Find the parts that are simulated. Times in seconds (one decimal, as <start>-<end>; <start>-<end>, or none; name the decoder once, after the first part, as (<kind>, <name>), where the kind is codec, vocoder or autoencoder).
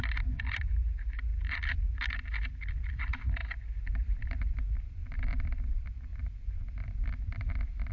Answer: 0.0-1.3 (vocoder, BigVGAN v2); 2.7-7.9